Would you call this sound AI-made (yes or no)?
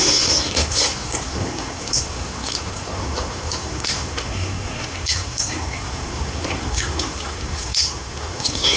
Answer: yes